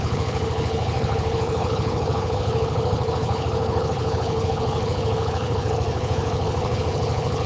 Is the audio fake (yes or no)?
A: yes